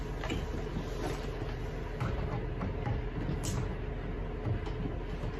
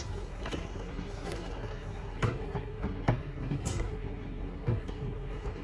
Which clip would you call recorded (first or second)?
first